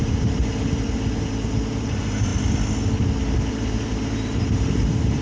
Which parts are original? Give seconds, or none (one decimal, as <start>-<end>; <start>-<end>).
2.3-3.5